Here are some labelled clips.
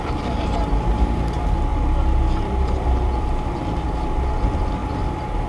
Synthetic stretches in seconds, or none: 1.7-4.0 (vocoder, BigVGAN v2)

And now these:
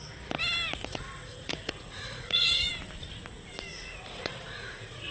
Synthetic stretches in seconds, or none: 0.8-2.7 (vocoder, Vocos); 3.7-5.1

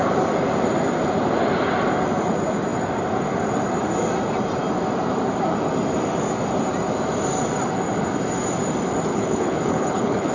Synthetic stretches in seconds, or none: 9.1-10.3 (codec, HILCodec)

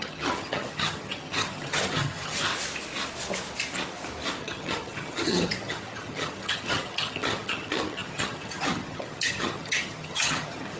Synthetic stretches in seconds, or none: 0.0-2.5 (vocoder, HiFi-GAN); 4.4-10.8